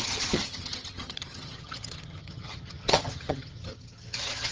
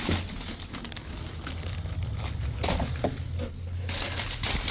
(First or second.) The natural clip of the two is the second